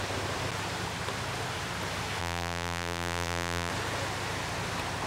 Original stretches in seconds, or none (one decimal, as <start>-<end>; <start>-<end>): 0.0-2.2; 3.7-5.1